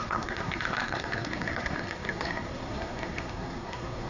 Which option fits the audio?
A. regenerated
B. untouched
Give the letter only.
A